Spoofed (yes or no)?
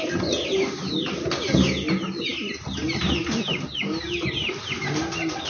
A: no